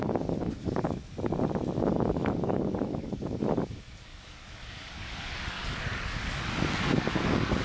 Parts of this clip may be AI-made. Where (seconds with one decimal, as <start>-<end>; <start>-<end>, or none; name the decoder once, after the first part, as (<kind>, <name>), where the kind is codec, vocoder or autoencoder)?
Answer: 0.0-1.0 (codec, DAC); 1.8-7.6